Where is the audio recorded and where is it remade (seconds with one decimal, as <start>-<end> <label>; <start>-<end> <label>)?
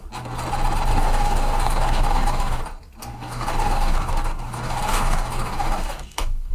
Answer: 0.0-0.9 recorded; 0.9-2.6 remade; 2.6-3.1 recorded; 3.1-6.5 remade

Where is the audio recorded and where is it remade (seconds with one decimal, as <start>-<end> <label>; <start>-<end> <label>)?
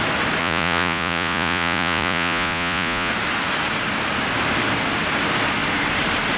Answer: 0.0-0.4 recorded; 0.4-3.1 remade; 3.1-6.4 recorded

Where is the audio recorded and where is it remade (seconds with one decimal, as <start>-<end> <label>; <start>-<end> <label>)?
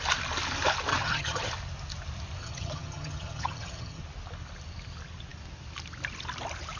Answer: 0.0-0.9 recorded; 0.9-1.5 remade; 1.5-2.4 recorded; 2.4-4.0 remade; 4.0-6.8 recorded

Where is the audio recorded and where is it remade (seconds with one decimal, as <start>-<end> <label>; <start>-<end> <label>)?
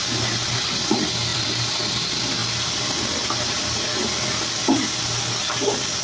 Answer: 0.0-1.3 recorded; 1.3-1.9 remade; 1.9-6.0 recorded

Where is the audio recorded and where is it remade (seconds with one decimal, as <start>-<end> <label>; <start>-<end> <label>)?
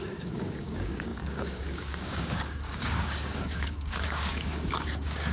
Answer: 0.0-5.3 remade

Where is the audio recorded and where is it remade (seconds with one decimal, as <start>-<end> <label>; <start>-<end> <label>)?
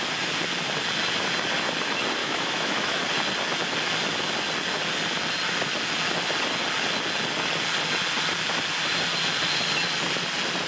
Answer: 0.0-2.2 recorded; 2.2-3.0 remade; 3.0-10.7 recorded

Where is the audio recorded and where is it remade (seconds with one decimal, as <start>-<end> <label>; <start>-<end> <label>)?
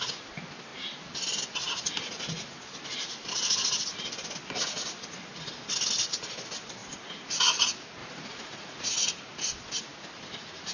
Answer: 0.0-8.0 recorded; 8.0-8.9 remade; 8.9-10.7 recorded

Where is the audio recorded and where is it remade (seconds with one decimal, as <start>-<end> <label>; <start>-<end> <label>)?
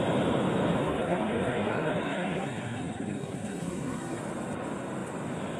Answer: 0.0-0.8 recorded; 0.8-4.2 remade; 4.2-5.6 recorded